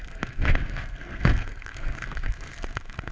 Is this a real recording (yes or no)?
no